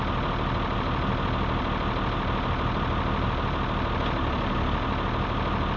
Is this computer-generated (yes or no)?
no